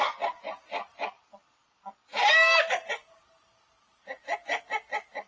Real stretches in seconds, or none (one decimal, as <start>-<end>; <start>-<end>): 0.0-5.3